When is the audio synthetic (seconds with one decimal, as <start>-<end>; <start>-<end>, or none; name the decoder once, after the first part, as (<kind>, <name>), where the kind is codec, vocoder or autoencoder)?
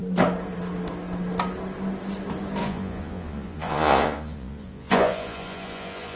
2.6-6.2 (vocoder, Vocos)